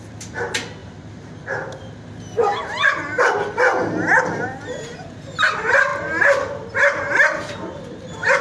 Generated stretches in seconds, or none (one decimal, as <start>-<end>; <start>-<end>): 5.9-6.7